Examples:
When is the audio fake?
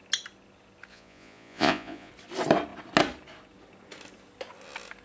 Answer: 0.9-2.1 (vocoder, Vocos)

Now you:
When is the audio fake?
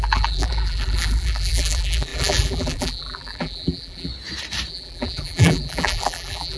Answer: 0.0-4.1 (vocoder, BigVGAN v2); 4.7-6.6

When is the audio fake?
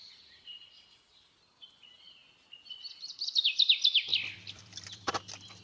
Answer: 4.1-5.0 (vocoder, BigVGAN v2)